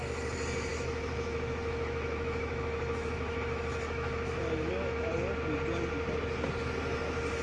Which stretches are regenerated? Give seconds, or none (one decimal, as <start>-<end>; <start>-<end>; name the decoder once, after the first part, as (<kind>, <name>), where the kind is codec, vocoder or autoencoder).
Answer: 0.7-5.1 (autoencoder, DAC-VAE)